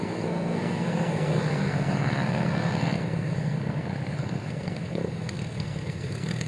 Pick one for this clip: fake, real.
fake